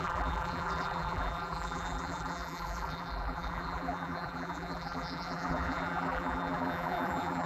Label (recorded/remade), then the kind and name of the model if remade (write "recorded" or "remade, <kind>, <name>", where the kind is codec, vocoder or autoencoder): remade, vocoder, BigVGAN v2